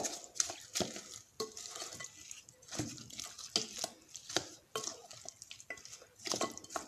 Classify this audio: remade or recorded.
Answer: recorded